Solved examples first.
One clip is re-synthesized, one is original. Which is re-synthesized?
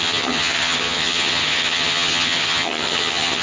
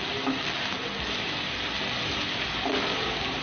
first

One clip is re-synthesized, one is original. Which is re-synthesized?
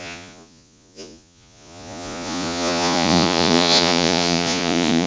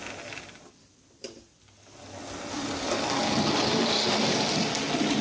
first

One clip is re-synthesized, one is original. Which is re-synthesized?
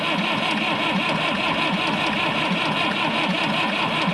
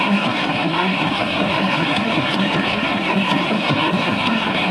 second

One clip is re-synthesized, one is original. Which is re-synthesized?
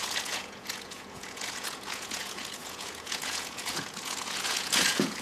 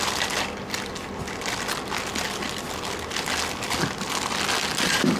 first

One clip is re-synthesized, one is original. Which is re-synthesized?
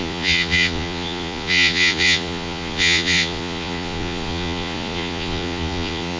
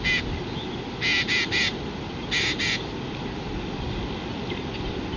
first